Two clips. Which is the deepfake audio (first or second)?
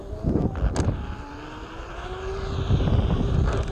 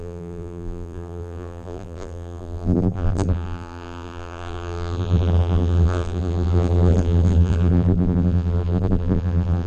second